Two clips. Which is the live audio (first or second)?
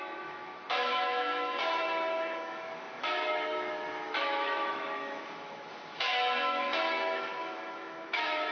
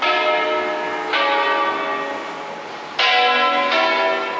second